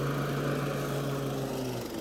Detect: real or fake real